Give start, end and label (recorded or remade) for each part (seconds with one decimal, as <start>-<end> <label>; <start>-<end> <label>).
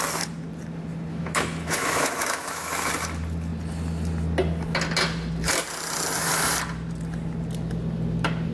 0.0-1.1 recorded; 1.1-2.9 remade; 2.9-8.5 recorded